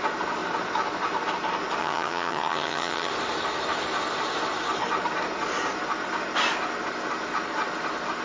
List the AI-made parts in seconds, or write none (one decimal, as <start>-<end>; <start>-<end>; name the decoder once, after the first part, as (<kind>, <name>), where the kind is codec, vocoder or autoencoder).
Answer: 1.8-3.1 (vocoder, HiFi-GAN)